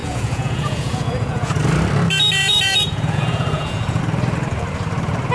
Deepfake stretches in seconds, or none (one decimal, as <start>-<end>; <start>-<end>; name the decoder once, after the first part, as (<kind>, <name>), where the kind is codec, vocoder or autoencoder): 0.0-1.6 (vocoder, Vocos); 2.4-4.0